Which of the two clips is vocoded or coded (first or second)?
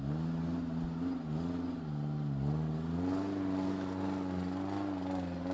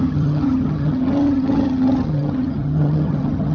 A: second